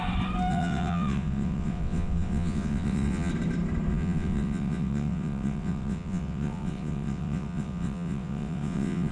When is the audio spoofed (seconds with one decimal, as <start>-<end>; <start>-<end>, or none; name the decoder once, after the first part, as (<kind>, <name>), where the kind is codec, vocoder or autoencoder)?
0.5-3.3 (vocoder, WaveNeXt); 3.9-9.1